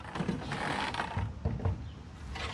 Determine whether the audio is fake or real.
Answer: real